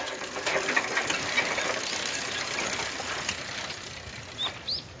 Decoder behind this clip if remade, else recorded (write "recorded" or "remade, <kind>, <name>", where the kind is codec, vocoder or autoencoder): recorded